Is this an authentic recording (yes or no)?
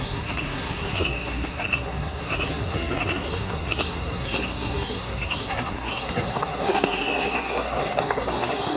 no